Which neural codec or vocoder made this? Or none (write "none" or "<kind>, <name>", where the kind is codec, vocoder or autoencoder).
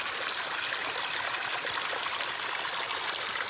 none